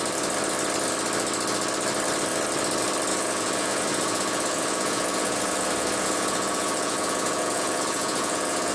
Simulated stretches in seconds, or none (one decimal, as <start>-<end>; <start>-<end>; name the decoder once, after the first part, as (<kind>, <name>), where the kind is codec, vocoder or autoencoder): 3.1-8.7 (vocoder, Vocos)